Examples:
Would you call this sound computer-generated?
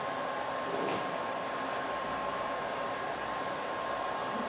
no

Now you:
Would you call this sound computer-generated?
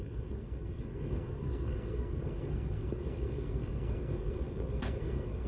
yes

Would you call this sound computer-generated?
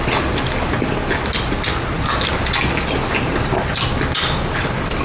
no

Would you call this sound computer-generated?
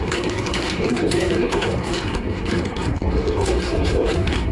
yes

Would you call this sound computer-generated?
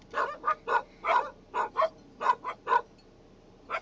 no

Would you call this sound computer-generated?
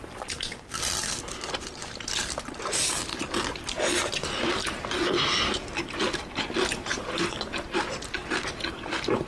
no